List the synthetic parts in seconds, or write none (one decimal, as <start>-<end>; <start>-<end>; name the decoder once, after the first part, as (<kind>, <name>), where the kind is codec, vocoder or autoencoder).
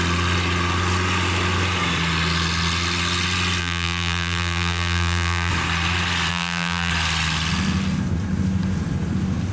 3.6-5.5 (vocoder, BigVGAN v2); 6.3-6.9